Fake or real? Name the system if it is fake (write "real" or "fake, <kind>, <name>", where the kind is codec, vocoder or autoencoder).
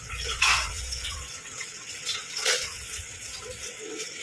fake, vocoder, WaveNeXt